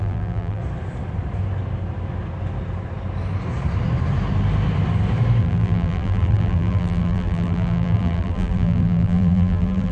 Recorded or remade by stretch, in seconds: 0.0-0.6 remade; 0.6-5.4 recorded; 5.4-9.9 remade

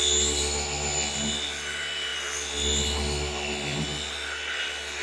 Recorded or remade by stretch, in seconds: 0.0-5.0 recorded